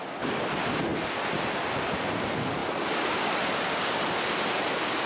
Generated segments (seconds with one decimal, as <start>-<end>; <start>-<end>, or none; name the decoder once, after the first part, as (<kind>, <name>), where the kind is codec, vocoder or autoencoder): none

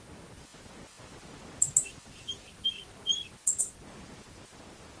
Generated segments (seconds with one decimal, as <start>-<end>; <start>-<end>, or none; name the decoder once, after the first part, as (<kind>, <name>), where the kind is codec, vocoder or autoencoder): none

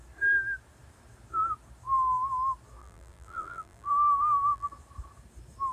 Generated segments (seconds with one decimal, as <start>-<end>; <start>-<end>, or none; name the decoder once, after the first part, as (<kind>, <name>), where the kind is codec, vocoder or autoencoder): 2.8-4.7 (vocoder, BigVGAN v2)

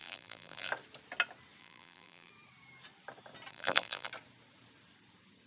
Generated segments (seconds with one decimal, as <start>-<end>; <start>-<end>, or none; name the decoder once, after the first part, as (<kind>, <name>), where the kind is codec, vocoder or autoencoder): 0.0-0.7 (vocoder, BigVGAN v2); 1.6-2.3; 3.5-4.1

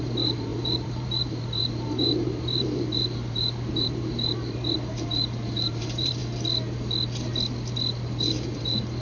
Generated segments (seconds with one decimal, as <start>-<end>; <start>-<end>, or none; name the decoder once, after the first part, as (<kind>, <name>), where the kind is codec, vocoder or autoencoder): 0.0-6.2 (vocoder, BigVGAN v2); 8.2-9.0

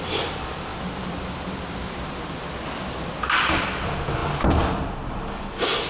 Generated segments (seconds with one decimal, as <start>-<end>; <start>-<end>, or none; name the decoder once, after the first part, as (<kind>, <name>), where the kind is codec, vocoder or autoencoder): 0.0-0.7 (vocoder, BigVGAN v2); 2.8-5.9

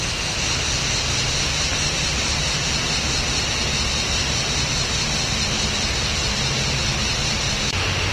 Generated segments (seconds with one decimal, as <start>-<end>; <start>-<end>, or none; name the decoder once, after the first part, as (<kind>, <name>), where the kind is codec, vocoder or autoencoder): 7.0-8.1 (vocoder, BigVGAN v2)

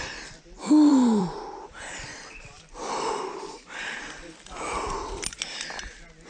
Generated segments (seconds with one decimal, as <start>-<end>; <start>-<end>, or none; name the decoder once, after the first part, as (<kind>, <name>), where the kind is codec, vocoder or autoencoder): 0.9-3.8 (vocoder, BigVGAN v2)